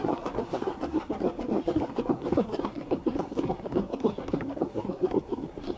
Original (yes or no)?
no